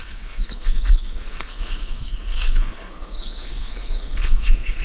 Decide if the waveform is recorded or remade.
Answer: remade